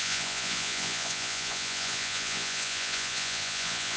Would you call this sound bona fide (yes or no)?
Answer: no